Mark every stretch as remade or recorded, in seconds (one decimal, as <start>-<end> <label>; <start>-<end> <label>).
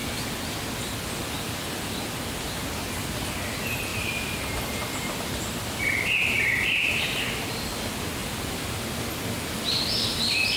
0.0-3.9 recorded; 3.9-5.2 remade; 5.2-10.6 recorded